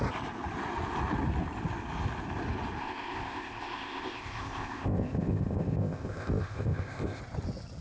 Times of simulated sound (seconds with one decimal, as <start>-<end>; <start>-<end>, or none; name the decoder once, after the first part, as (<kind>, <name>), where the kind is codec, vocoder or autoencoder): 2.8-7.2 (codec, ZipCodec)